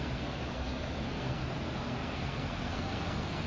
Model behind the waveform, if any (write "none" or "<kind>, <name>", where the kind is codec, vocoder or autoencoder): codec, SNAC